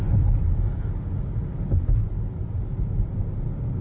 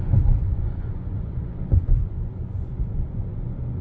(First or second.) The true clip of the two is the first